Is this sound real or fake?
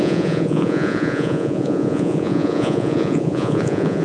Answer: fake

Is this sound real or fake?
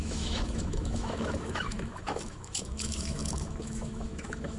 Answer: fake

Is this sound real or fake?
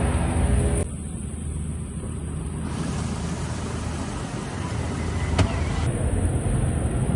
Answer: real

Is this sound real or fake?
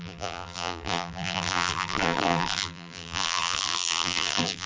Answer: fake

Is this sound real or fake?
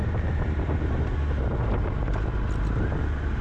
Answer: real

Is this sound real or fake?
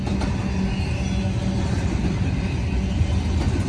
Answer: real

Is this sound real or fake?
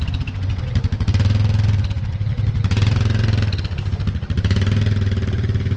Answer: real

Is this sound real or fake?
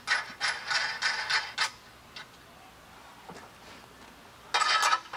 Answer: real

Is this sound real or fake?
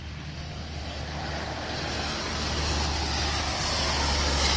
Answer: real